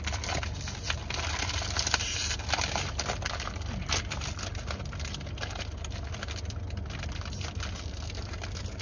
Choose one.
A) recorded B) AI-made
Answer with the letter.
A